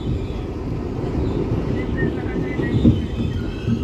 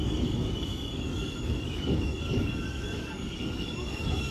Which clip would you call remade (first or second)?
second